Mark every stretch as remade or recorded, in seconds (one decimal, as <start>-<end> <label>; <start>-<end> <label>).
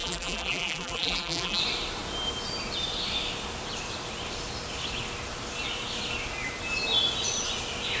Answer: 0.0-1.6 remade; 1.6-8.0 recorded